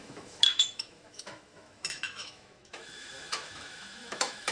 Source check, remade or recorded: remade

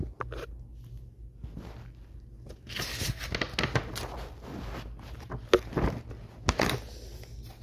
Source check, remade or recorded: recorded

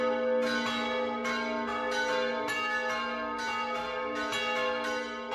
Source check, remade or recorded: recorded